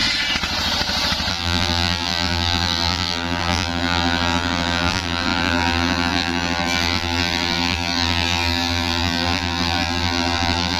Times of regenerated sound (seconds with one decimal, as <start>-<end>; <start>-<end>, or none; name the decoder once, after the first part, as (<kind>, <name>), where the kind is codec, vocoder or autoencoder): 1.3-10.8 (vocoder, BigVGAN v2)